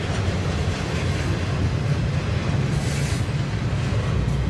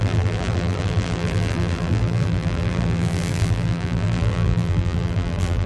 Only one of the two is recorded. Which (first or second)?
first